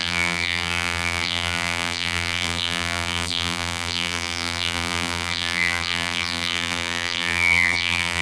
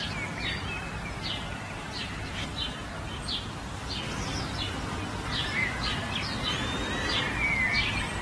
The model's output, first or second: first